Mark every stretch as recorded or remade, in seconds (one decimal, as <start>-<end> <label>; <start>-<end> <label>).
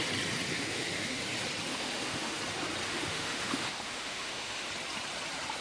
0.0-0.5 recorded; 0.5-1.2 remade; 1.2-1.7 recorded; 1.7-2.4 remade; 2.4-2.9 recorded; 2.9-4.7 remade; 4.7-5.6 recorded